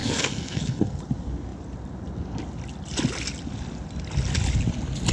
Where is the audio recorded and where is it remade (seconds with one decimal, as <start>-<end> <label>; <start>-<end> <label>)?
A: 0.0-1.0 remade; 1.0-5.1 recorded